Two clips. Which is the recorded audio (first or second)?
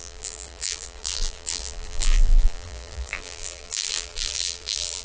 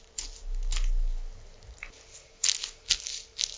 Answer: second